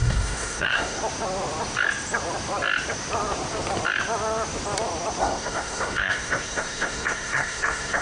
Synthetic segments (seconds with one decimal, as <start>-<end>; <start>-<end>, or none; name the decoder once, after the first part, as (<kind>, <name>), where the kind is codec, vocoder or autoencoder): 0.0-1.0 (codec, SNAC); 5.2-8.0